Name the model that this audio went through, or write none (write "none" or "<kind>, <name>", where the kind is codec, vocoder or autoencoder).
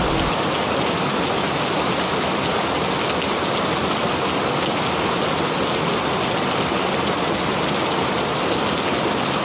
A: none